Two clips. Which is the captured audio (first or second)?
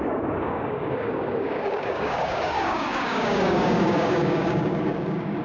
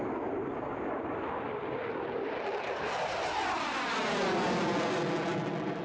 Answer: second